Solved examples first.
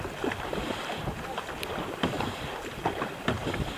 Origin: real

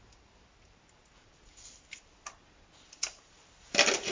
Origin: real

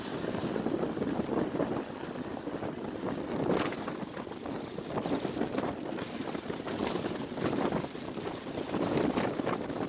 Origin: real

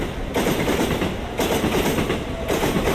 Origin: real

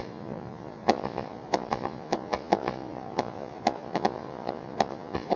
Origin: fake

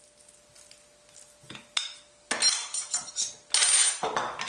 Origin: real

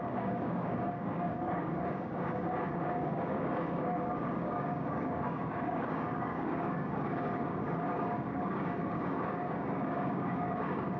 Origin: fake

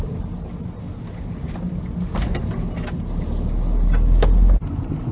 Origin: real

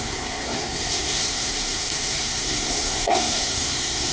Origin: fake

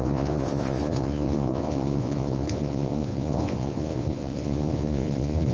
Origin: fake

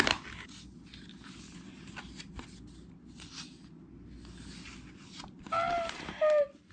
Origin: real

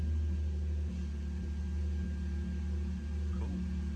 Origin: real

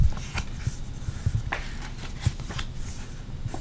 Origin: real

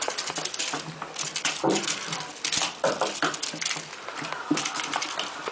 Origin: fake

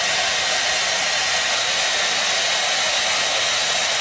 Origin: real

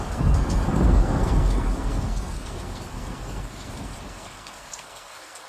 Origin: fake